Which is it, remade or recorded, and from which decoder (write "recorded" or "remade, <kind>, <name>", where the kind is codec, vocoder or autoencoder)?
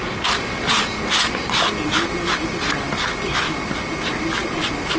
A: recorded